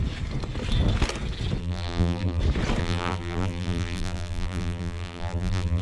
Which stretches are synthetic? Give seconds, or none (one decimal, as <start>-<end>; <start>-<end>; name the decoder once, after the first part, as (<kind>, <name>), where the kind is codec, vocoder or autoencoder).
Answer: 1.6-2.4 (vocoder, BigVGAN v2); 2.8-5.8